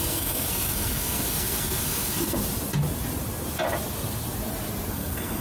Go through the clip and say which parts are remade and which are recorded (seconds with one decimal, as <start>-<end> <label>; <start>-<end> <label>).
0.0-2.4 remade; 2.4-4.9 recorded; 4.9-5.4 remade